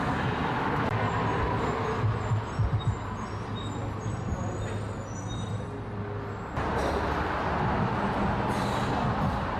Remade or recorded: recorded